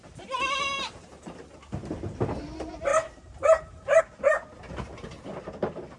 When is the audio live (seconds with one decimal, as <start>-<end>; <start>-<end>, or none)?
1.4-2.9; 4.0-6.0